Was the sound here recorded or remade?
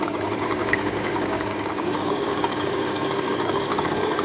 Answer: remade